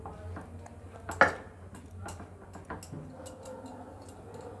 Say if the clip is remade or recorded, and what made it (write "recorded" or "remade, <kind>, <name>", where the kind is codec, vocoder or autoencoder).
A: recorded